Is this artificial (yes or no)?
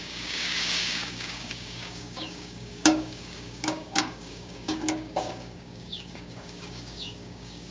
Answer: yes